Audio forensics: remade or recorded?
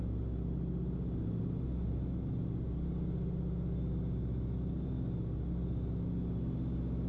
recorded